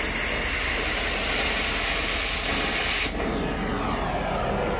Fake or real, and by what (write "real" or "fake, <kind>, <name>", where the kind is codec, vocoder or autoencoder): real